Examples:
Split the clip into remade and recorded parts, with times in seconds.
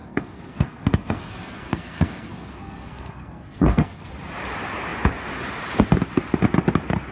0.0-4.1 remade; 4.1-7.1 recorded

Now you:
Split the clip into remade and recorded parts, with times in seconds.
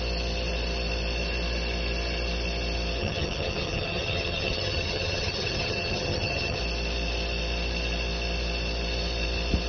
0.0-3.0 recorded; 3.0-6.6 remade; 6.6-9.7 recorded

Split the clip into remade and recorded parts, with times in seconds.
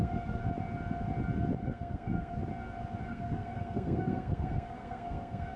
0.0-0.4 remade; 0.4-1.6 recorded; 1.6-2.4 remade; 2.4-3.1 recorded; 3.1-5.6 remade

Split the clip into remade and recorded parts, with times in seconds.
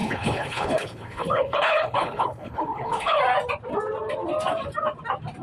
0.0-3.2 remade; 3.2-5.4 recorded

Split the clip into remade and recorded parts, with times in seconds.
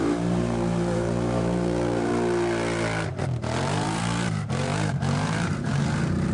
0.0-2.1 remade; 2.1-3.2 recorded; 3.2-6.3 remade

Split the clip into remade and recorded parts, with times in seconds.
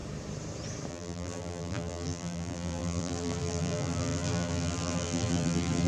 0.0-0.9 recorded; 0.9-5.9 remade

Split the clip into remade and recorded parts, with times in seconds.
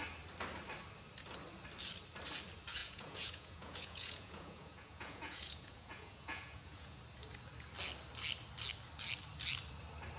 0.0-2.8 recorded; 2.8-7.0 remade; 7.0-10.2 recorded